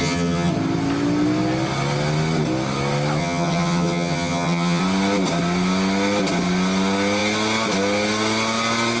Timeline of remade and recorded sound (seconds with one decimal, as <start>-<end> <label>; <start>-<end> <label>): 0.0-0.5 remade; 0.5-3.2 recorded; 3.2-4.8 remade; 4.8-9.0 recorded